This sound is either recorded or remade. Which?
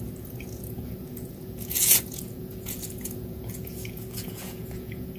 remade